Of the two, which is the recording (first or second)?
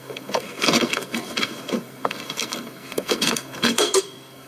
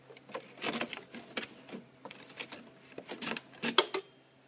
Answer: second